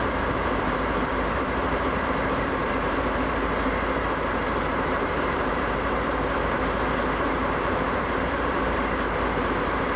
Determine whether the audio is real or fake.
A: fake